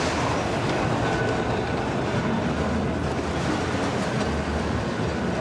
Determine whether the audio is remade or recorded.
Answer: recorded